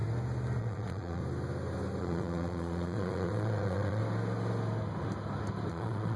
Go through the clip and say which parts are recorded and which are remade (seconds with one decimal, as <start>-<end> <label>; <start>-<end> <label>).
0.0-0.6 recorded; 0.6-1.2 remade; 1.2-2.0 recorded; 2.0-4.0 remade; 4.0-5.7 recorded; 5.7-6.2 remade